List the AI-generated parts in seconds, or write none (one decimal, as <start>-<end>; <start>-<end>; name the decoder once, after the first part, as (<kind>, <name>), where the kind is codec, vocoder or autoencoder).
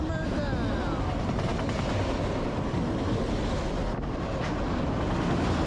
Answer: none